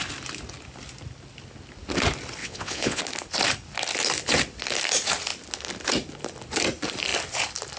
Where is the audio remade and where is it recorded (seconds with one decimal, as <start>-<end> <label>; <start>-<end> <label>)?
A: 0.0-2.4 recorded; 2.4-3.0 remade; 3.0-7.8 recorded